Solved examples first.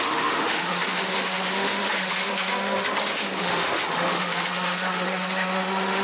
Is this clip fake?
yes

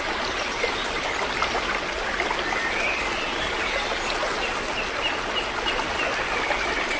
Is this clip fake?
no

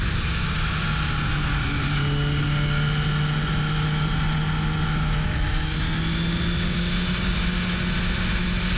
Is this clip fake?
no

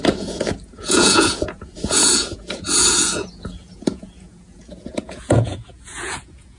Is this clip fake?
yes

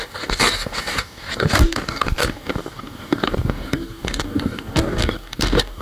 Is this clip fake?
yes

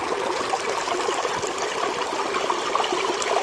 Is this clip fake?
no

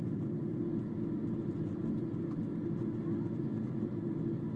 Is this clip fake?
no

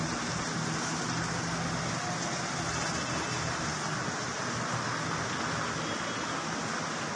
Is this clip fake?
no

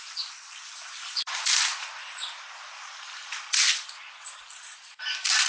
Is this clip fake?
yes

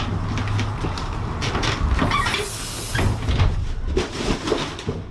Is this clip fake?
no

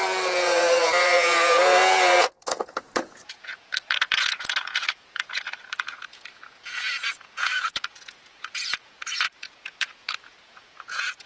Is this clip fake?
yes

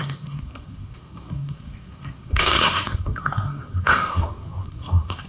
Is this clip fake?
yes